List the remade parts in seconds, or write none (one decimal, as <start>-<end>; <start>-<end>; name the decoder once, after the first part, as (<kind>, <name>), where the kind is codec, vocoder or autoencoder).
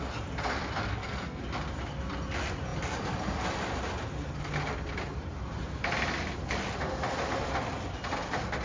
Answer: 0.9-1.4 (codec, SNAC)